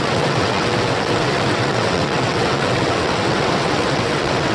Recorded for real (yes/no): no